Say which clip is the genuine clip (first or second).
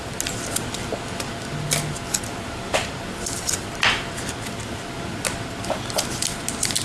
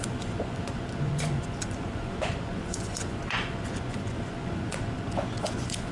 first